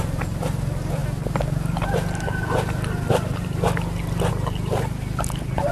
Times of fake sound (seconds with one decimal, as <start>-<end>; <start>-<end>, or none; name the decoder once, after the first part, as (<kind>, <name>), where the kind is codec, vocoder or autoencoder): none